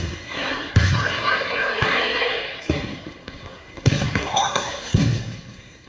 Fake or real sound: fake